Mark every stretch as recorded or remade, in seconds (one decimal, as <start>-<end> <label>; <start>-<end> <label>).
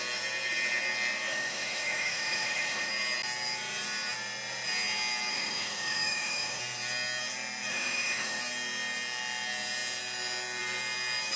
0.0-1.3 recorded; 1.3-2.9 remade; 2.9-5.3 recorded; 5.3-6.6 remade; 6.6-7.7 recorded; 7.7-8.4 remade; 8.4-11.4 recorded